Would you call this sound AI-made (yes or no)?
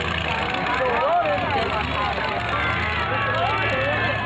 no